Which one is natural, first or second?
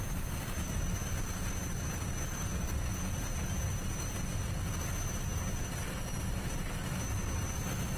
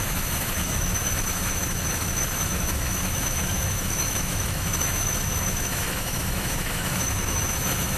first